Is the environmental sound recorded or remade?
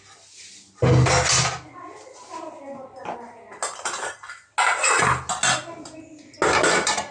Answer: recorded